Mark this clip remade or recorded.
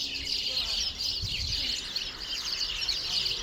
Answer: recorded